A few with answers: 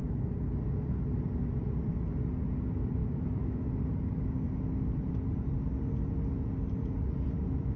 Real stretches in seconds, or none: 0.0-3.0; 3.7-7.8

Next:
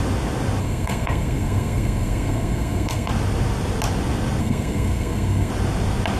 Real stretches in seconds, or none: 0.0-0.6; 3.1-4.4; 5.5-6.2

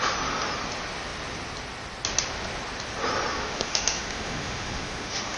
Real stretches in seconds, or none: 0.0-3.3

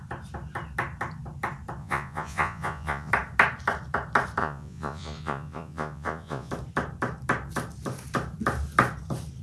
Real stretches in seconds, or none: 0.0-1.8; 3.1-4.4; 6.5-9.4

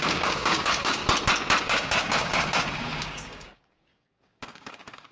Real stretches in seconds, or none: 1.0-1.6

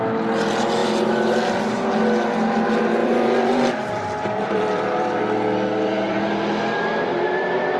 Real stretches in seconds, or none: 0.0-0.8; 1.6-3.0; 5.2-6.1

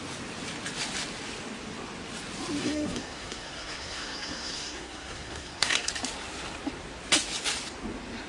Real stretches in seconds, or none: 0.0-2.6; 5.9-8.3

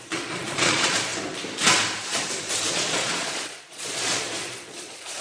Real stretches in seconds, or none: 1.1-2.7